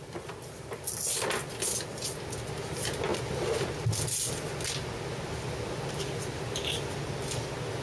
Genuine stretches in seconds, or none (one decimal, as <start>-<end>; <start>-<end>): 0.0-7.8